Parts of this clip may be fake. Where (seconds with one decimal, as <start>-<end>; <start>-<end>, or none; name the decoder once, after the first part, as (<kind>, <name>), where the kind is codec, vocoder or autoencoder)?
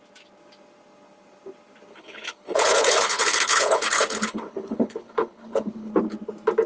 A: 1.9-5.9 (codec, HILCodec)